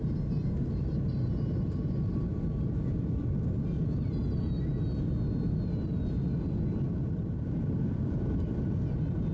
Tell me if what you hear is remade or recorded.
recorded